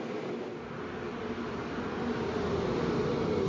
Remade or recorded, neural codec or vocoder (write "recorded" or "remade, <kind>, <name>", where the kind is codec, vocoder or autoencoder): recorded